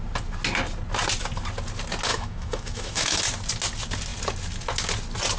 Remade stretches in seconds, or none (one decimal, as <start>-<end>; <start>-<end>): 2.1-3.2